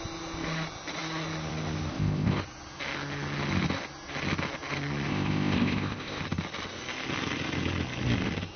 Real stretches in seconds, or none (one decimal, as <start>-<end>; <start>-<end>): 0.0-1.9; 2.4-5.1; 6.2-8.6